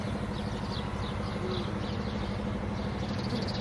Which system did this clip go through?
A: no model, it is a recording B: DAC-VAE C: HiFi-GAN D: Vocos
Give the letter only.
A